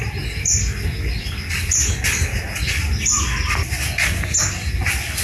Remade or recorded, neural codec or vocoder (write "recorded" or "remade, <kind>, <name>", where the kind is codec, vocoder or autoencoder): recorded